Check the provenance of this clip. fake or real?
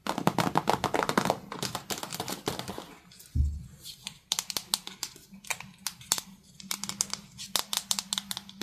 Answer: real